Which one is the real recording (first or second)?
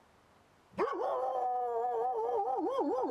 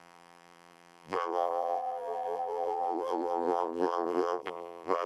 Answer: first